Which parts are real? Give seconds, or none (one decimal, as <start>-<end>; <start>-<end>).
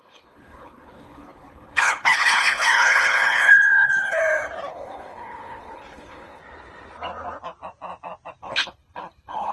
4.2-4.7; 6.4-8.4